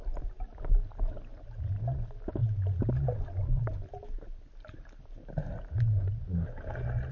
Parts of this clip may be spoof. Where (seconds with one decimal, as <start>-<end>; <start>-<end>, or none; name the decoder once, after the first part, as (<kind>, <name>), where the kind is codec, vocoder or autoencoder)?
none